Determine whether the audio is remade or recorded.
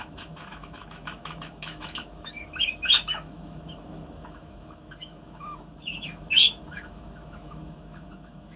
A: remade